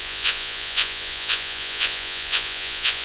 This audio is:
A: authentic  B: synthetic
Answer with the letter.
B